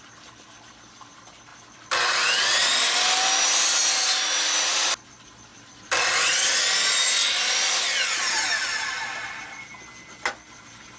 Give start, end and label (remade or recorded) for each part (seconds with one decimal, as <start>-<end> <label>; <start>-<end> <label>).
0.0-11.0 recorded

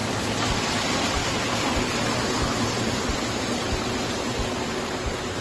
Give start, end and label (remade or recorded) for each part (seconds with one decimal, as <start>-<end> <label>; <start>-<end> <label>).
0.0-5.4 recorded

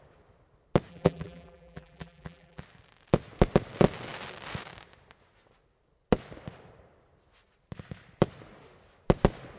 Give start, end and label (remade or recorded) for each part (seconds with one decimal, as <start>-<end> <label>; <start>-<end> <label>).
0.0-0.9 recorded; 0.9-2.6 remade; 2.6-9.6 recorded

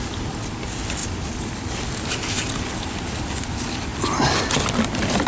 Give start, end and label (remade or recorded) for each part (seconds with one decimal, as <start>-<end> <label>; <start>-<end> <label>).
0.0-5.3 recorded

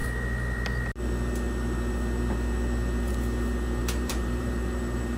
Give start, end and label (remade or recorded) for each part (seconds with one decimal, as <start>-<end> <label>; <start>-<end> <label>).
0.0-3.8 recorded; 3.8-5.2 remade

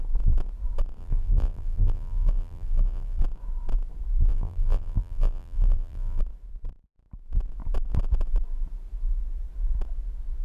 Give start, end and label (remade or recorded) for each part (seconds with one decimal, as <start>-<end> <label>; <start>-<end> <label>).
0.0-1.0 recorded; 1.0-3.2 remade; 3.2-4.3 recorded; 4.3-6.2 remade; 6.2-10.4 recorded

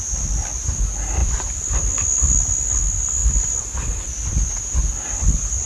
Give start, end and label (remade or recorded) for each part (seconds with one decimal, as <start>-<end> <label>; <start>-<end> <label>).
0.0-1.2 recorded; 1.2-2.8 remade; 2.8-3.2 recorded; 3.2-4.8 remade; 4.8-5.7 recorded